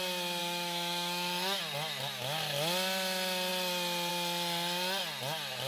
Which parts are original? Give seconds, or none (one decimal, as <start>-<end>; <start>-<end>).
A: 0.0-0.4; 1.6-5.7